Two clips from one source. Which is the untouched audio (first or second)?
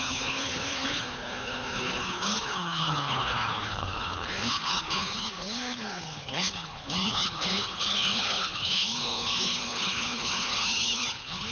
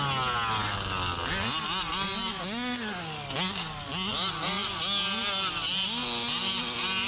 second